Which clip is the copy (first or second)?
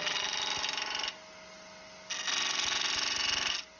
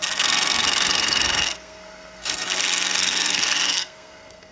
second